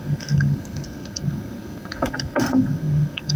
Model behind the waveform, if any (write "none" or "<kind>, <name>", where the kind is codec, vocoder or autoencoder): codec, SNAC